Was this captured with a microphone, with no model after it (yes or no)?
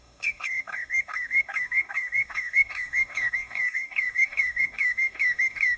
no